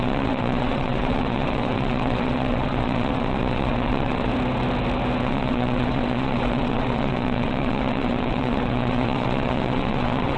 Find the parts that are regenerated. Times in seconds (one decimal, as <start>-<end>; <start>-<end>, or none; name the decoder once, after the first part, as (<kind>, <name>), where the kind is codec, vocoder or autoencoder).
0.0-4.3 (vocoder, WaveNeXt); 5.2-10.4